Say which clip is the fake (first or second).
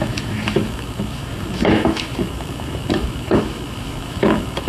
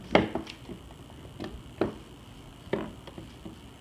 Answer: first